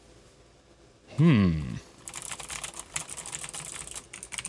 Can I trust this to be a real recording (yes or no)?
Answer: yes